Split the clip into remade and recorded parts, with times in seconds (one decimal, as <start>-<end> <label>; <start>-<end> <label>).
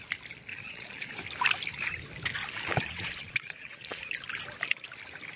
0.0-0.5 recorded; 0.5-1.1 remade; 1.1-2.4 recorded; 2.4-4.0 remade; 4.0-5.4 recorded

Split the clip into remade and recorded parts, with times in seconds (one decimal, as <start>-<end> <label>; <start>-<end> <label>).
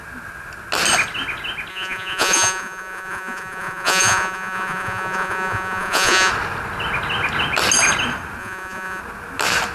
0.0-1.7 recorded; 1.7-6.3 remade; 6.3-8.4 recorded; 8.4-9.0 remade; 9.0-9.7 recorded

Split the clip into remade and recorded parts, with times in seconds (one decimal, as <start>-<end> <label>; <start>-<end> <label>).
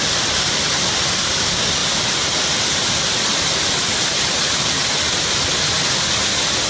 0.0-4.8 remade; 4.8-6.7 recorded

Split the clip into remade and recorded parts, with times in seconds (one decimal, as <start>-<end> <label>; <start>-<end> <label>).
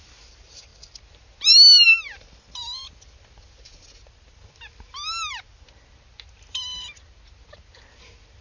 0.0-8.4 recorded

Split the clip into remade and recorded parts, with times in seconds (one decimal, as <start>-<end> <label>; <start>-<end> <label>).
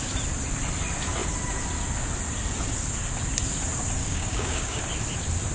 0.0-4.0 recorded; 4.0-4.8 remade; 4.8-5.5 recorded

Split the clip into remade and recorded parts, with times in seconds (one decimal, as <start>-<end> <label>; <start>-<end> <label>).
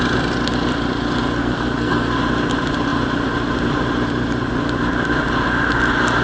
0.0-1.4 recorded; 1.4-2.2 remade; 2.2-6.2 recorded